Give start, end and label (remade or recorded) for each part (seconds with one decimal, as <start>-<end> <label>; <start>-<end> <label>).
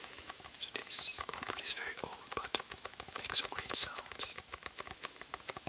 0.0-5.7 remade